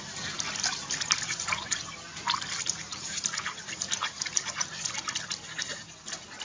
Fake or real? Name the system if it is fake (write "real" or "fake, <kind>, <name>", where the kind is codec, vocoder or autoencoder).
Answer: real